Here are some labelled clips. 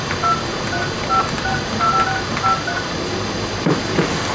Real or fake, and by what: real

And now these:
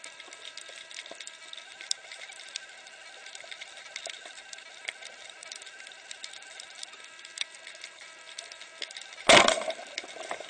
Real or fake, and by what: real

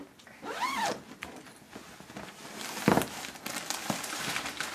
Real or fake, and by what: real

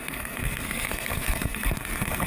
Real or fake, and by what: fake, codec, SNAC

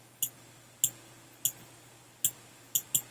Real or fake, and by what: real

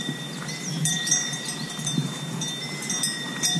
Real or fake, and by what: real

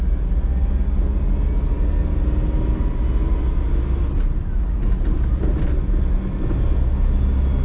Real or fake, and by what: real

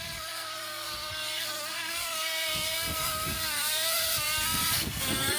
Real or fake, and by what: fake, codec, SNAC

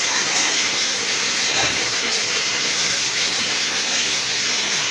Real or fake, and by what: fake, codec, SNAC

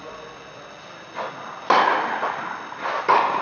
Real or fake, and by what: real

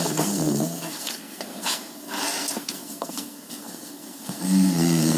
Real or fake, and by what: fake, codec, SNAC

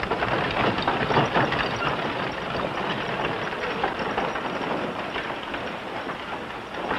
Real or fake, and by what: real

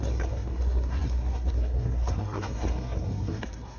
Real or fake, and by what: fake, codec, SNAC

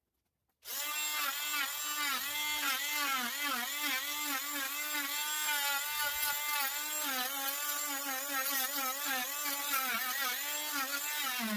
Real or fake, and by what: real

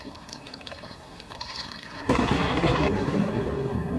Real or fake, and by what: fake, codec, SNAC